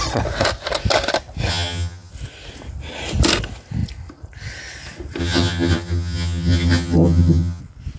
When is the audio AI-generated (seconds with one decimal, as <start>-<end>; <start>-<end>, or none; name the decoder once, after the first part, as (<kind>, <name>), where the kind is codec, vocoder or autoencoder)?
1.5-2.1 (vocoder, HiFi-GAN); 5.2-7.6